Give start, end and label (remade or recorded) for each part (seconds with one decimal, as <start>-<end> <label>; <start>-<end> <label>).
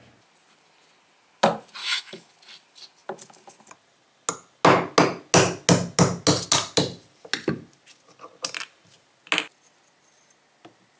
0.0-1.8 recorded; 1.8-2.3 remade; 2.3-11.0 recorded